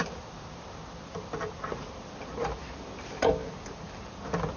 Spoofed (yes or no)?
no